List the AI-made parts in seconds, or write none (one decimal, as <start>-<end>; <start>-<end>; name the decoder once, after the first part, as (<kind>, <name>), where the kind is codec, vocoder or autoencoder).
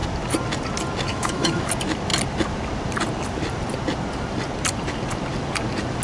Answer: 1.1-1.7 (autoencoder, DAC-VAE)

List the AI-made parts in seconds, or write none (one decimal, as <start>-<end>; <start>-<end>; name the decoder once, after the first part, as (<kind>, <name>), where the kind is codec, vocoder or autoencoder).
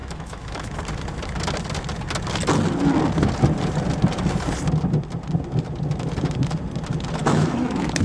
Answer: 0.0-0.8 (autoencoder, DAC-VAE); 7.2-8.0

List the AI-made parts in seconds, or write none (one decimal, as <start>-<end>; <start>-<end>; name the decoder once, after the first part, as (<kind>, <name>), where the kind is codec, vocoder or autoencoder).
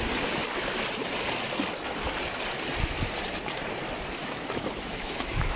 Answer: 4.2-5.6 (autoencoder, DAC-VAE)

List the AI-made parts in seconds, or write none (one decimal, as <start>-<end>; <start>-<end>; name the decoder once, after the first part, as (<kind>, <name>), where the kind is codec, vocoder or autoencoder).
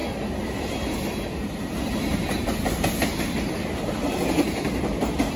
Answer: none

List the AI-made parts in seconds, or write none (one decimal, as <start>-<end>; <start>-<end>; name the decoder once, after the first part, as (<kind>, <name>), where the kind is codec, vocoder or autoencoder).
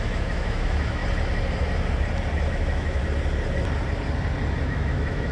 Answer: 0.0-1.0 (autoencoder, DAC-VAE); 2.5-3.0; 4.6-5.3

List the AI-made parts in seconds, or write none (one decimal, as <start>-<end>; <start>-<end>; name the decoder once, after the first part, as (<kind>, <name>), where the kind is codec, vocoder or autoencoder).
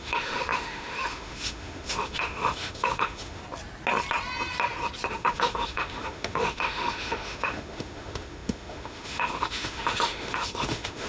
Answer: 0.0-3.4 (autoencoder, DAC-VAE); 5.1-11.1